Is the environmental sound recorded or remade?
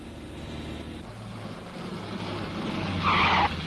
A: recorded